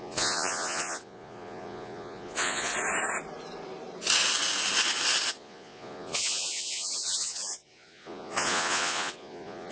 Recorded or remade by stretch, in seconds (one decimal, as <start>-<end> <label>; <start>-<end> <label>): 0.0-2.7 remade; 2.7-5.3 recorded; 5.3-9.7 remade

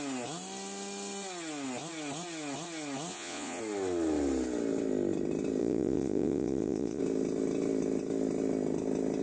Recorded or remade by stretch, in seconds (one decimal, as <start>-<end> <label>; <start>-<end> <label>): 0.0-3.1 recorded; 3.1-3.6 remade; 3.6-5.6 recorded; 5.6-7.0 remade; 7.0-9.2 recorded

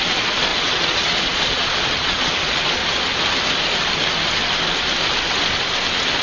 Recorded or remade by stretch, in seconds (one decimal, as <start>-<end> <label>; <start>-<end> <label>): 0.0-2.8 remade; 2.8-6.2 recorded

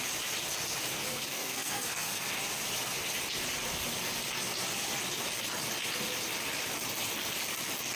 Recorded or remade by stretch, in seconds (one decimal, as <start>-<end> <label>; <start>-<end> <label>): 0.0-1.1 recorded; 1.1-2.3 remade; 2.3-8.0 recorded

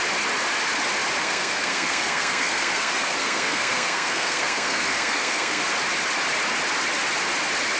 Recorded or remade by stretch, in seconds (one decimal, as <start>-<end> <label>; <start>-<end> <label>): 0.0-1.2 recorded; 1.2-5.6 remade; 5.6-7.8 recorded

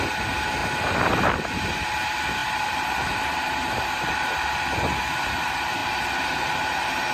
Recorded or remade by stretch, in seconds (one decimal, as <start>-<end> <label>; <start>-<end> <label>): 0.0-2.4 recorded; 2.4-4.6 remade; 4.6-5.8 recorded; 5.8-7.1 remade

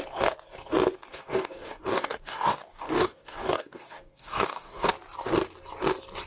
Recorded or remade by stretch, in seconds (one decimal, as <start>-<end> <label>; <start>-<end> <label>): 0.0-1.1 recorded; 1.1-4.9 remade; 4.9-6.3 recorded

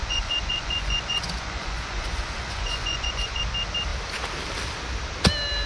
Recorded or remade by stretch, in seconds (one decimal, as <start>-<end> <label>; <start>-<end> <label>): 0.0-3.4 remade; 3.4-5.7 recorded